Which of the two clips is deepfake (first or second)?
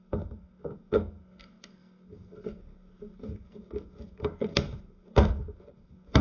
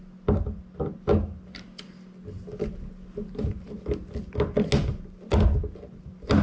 first